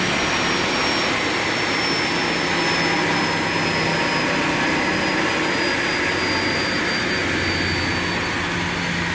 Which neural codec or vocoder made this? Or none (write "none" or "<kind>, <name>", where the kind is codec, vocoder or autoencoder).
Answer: none